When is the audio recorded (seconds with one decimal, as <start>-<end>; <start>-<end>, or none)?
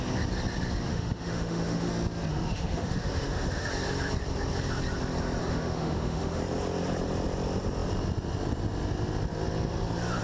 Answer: 0.0-0.9; 1.9-2.3; 3.7-5.4; 6.4-10.2